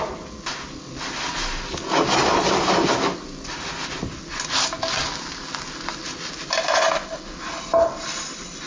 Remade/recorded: recorded